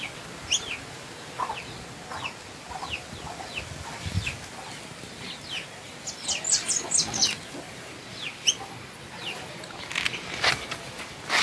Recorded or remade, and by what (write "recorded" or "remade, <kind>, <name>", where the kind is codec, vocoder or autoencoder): recorded